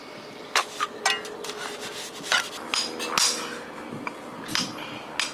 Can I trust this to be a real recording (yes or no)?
yes